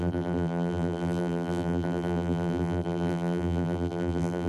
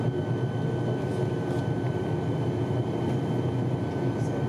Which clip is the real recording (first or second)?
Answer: second